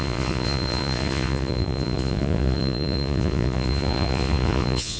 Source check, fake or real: fake